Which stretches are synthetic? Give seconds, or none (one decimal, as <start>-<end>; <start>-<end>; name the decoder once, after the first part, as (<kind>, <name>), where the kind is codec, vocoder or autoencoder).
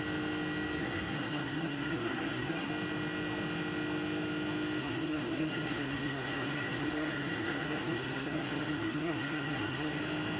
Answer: 0.8-2.7 (codec, SNAC); 4.8-10.0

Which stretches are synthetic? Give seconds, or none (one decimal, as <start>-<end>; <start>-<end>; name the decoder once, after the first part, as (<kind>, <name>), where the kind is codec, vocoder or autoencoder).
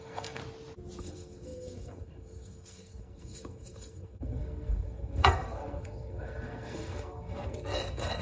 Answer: 0.0-0.4 (codec, SNAC); 1.0-8.2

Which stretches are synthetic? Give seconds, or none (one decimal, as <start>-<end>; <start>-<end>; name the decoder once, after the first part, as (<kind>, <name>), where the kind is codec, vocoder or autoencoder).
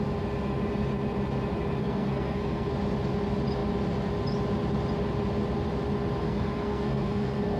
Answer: 1.8-2.7 (codec, SNAC); 6.2-7.6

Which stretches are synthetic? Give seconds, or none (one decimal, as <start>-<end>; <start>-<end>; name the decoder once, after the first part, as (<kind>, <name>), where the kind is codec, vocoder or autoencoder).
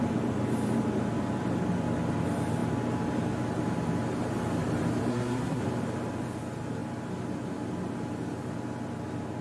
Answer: 5.1-5.6 (codec, SNAC)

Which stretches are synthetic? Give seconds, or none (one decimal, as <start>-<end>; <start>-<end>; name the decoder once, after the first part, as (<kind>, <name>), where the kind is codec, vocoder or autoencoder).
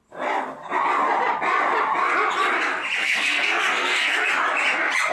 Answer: 3.0-4.3 (codec, SNAC)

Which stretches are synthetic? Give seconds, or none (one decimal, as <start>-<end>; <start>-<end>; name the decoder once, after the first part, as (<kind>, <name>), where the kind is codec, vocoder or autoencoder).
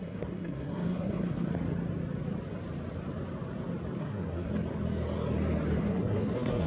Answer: 0.0-1.5 (codec, SNAC); 4.0-4.5; 5.8-6.7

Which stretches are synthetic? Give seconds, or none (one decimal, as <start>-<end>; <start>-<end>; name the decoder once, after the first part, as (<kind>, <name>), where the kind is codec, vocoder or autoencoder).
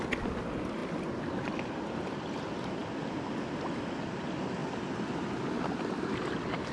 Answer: none